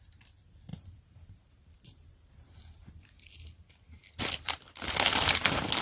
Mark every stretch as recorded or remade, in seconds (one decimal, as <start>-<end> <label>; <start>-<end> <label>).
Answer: 0.0-0.7 recorded; 0.7-4.2 remade; 4.2-5.8 recorded